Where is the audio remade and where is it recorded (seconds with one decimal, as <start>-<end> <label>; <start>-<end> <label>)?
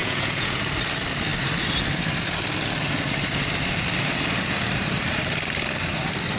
0.0-0.6 remade; 0.6-6.4 recorded